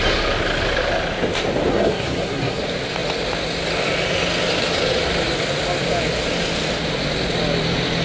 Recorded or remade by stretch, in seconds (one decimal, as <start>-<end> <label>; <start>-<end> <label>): 0.0-1.7 recorded; 1.7-2.6 remade; 2.6-8.0 recorded